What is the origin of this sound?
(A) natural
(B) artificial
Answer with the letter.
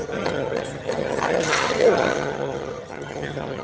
B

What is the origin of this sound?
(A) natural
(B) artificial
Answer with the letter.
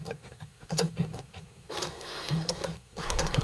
B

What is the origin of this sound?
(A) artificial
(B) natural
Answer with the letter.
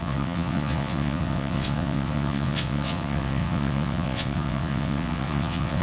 A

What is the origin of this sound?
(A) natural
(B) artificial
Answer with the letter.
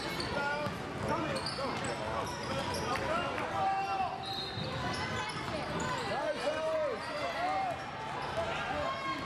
A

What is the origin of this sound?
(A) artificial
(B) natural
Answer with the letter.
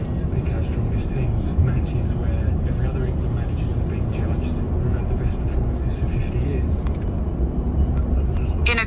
B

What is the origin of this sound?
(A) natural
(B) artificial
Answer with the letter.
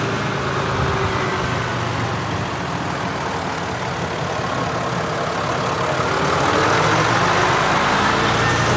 A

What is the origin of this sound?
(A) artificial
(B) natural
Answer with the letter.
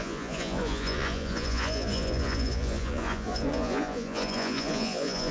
A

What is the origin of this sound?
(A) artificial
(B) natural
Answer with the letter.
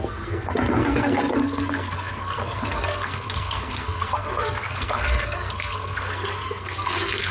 A